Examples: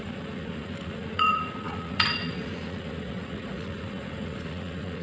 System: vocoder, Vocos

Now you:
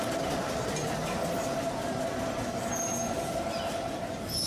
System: none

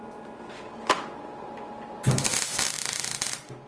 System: none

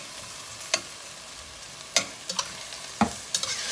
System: none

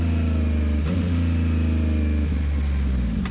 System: none